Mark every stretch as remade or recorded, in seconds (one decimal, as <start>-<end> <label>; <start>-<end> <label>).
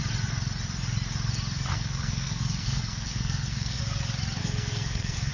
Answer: 0.0-1.7 recorded; 1.7-3.8 remade; 3.8-4.4 recorded; 4.4-5.3 remade